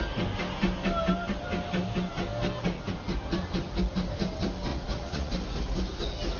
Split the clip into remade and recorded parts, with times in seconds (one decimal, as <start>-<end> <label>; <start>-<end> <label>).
0.0-4.7 recorded; 4.7-5.3 remade; 5.3-6.4 recorded